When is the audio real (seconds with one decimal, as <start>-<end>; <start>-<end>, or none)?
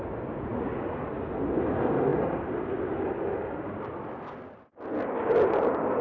0.0-6.0